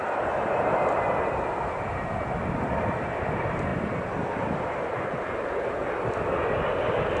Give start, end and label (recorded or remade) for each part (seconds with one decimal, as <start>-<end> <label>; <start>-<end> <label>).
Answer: 0.0-7.2 recorded